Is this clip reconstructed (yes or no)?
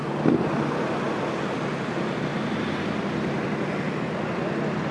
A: no